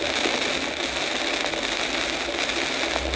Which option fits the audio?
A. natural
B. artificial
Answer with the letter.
A